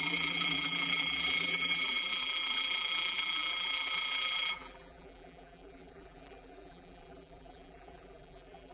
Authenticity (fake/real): fake